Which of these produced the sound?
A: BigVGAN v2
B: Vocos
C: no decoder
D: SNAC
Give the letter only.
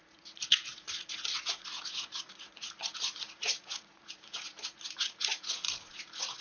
B